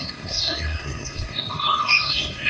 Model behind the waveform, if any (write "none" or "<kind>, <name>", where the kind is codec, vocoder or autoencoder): codec, SNAC